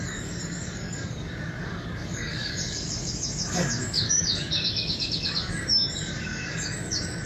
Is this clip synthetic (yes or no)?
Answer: yes